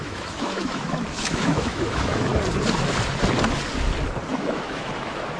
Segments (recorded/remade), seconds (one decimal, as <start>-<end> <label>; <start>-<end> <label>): 0.0-2.3 remade; 2.3-4.3 recorded; 4.3-5.4 remade